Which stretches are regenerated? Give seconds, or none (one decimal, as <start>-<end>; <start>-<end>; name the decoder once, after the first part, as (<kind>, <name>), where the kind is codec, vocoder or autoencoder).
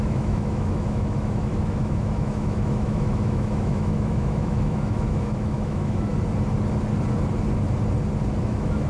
0.0-6.1 (autoencoder, DAC-VAE); 8.4-8.9